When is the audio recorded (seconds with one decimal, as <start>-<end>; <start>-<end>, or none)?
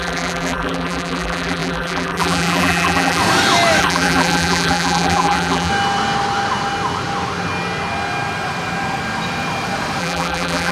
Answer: 3.2-3.8; 5.7-10.0